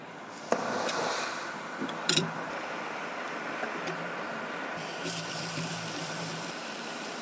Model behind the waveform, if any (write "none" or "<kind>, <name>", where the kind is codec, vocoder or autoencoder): vocoder, BigVGAN v2